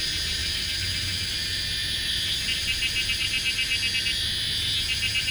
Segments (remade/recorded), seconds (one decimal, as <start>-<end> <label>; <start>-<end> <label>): 0.0-0.4 recorded; 0.4-1.3 remade; 1.3-5.3 recorded